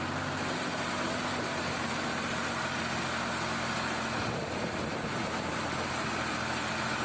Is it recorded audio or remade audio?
recorded